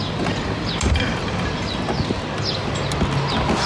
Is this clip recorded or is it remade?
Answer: recorded